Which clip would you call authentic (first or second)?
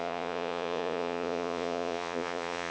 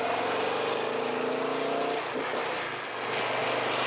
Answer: second